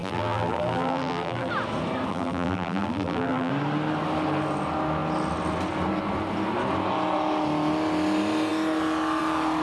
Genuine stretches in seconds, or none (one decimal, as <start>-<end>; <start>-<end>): 1.5-2.1; 3.5-9.6